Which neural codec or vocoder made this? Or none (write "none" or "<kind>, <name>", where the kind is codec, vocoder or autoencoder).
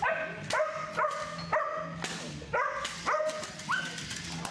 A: none